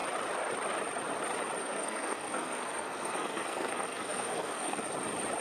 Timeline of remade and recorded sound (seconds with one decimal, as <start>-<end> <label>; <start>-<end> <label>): 0.0-1.6 recorded; 1.6-4.8 remade; 4.8-5.4 recorded